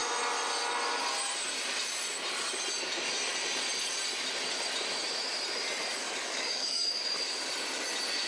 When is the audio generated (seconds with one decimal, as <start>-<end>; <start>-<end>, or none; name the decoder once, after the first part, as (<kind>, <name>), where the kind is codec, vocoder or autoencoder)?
6.0-7.0 (codec, DAC)